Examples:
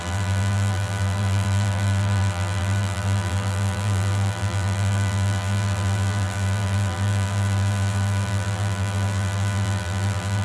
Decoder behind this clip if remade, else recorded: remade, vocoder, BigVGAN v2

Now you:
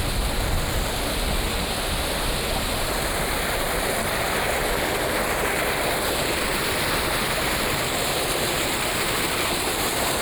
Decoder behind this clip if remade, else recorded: recorded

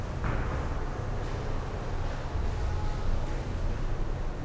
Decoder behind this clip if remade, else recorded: recorded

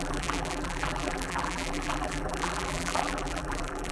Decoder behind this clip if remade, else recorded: remade, vocoder, BigVGAN v2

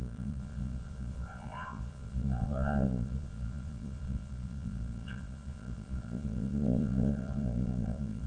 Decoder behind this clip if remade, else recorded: remade, vocoder, Vocos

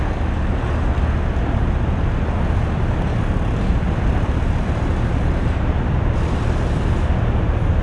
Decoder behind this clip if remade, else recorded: recorded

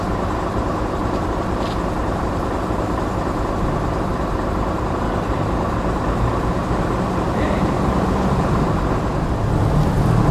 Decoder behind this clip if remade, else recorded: recorded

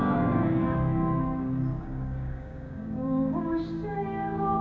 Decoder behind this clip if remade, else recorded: remade, codec, DAC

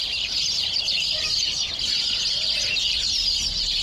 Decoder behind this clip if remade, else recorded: recorded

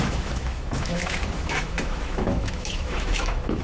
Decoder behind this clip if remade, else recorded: remade, autoencoder, DAC-VAE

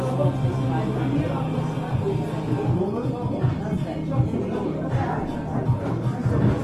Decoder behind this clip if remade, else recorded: recorded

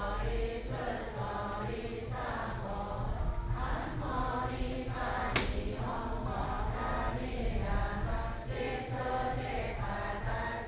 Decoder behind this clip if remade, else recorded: recorded